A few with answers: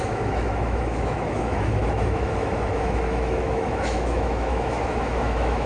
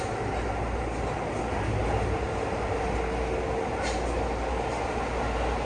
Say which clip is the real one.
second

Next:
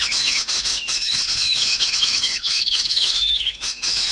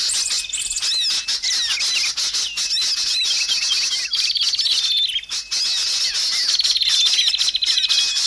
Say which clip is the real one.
second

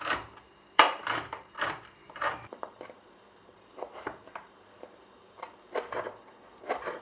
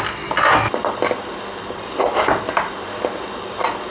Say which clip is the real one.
second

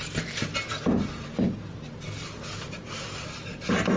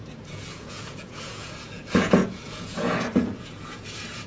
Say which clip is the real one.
first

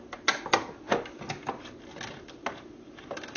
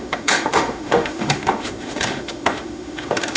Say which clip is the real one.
first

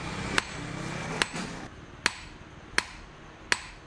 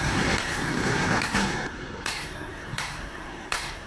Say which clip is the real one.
first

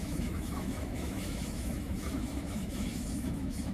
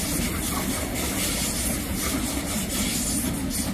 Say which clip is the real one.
second